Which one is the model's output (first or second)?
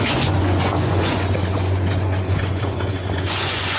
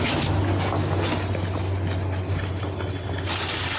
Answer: first